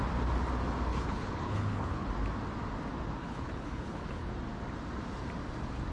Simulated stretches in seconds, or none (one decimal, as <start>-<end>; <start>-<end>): 0.9-2.1; 3.2-4.3